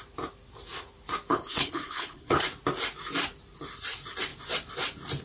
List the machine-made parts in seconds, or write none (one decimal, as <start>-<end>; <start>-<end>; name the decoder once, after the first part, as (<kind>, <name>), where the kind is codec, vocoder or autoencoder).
1.3-2.4 (codec, HILCodec)